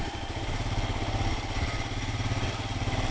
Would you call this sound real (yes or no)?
yes